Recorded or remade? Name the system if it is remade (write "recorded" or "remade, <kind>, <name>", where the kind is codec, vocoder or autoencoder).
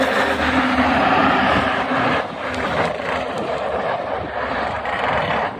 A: remade, vocoder, BigVGAN v2